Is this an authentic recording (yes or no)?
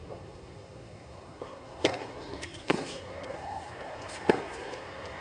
no